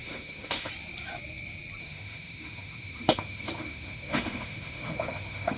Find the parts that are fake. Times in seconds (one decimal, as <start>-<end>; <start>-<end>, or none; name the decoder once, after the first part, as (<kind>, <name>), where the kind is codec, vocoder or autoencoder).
0.0-0.7 (autoencoder, DAC-VAE); 1.8-5.6